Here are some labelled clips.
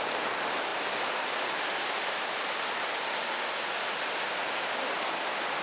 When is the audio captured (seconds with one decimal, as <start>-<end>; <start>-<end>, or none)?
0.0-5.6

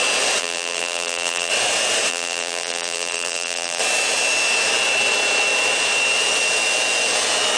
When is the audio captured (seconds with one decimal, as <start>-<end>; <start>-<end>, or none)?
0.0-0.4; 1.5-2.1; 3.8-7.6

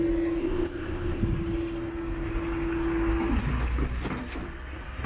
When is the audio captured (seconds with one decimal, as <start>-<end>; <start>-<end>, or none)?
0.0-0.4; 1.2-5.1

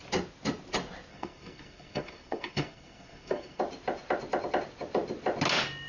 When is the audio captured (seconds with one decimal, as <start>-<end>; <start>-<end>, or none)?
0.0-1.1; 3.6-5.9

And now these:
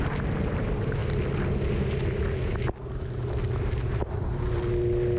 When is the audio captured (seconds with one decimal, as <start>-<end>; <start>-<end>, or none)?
0.0-5.2

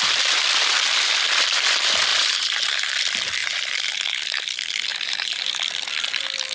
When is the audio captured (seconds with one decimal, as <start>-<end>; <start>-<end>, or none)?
0.0-2.1; 2.9-3.4; 4.0-4.9; 5.5-6.5

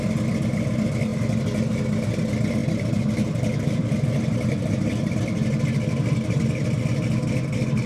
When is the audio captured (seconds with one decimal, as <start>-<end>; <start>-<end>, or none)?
0.0-2.6; 5.6-7.9

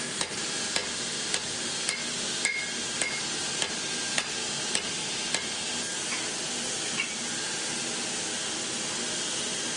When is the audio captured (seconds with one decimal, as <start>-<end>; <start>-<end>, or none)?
0.0-9.8